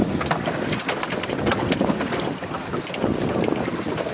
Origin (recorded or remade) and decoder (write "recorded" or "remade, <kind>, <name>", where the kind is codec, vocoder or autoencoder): recorded